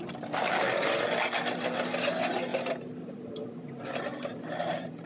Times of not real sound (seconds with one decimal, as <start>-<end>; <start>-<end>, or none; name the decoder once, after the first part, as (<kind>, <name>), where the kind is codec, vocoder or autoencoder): 2.5-3.8 (vocoder, BigVGAN v2); 4.3-5.1